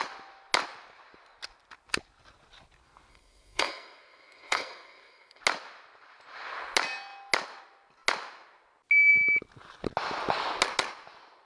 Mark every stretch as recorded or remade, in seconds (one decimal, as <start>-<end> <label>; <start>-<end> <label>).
0.0-3.1 recorded; 3.1-5.4 remade; 5.4-11.5 recorded